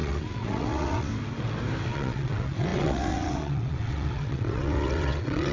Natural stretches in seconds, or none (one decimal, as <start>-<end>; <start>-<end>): 1.1-1.9